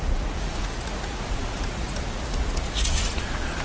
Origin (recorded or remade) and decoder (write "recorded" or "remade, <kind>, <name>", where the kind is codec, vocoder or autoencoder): remade, vocoder, Vocos